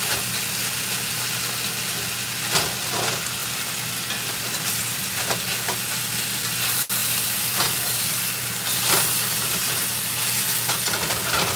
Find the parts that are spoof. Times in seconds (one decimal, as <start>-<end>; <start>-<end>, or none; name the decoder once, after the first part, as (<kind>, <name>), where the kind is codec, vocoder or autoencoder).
3.4-5.2 (vocoder, BigVGAN v2); 7.0-8.0